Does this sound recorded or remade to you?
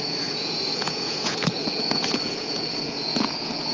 remade